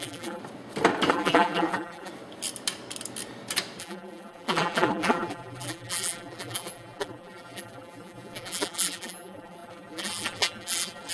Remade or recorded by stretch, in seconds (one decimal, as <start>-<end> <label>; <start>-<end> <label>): 0.0-0.4 remade; 0.4-1.1 recorded; 1.1-2.1 remade; 2.1-3.8 recorded; 3.8-11.1 remade